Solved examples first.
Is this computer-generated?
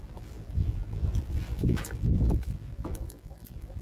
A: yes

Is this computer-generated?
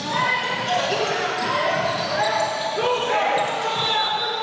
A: yes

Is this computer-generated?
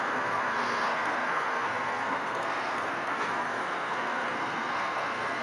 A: yes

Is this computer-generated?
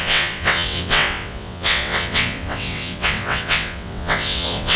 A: yes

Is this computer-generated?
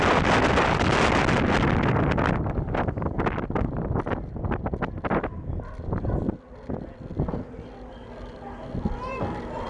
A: no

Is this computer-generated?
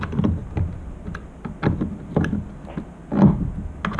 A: no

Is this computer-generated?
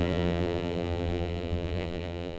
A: yes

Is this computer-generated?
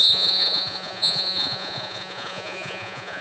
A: yes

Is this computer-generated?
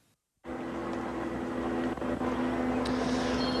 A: no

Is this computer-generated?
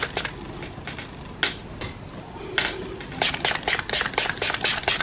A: no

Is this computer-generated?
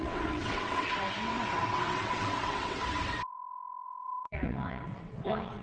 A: yes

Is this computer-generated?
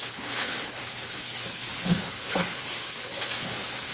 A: yes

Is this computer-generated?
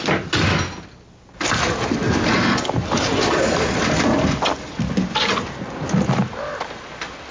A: no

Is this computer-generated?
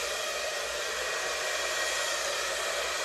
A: no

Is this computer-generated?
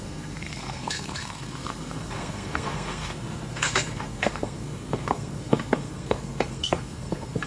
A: yes